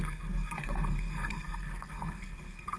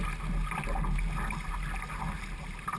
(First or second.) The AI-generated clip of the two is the first